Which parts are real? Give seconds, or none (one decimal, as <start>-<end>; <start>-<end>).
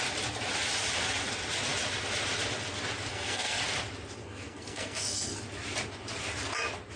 0.0-3.1; 3.6-4.2; 5.4-7.0